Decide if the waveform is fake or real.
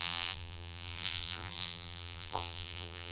fake